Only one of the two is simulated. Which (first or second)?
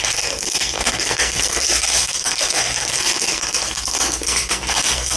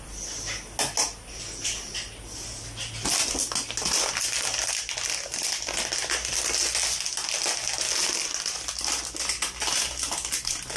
first